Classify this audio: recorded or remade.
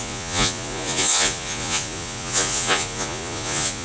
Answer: remade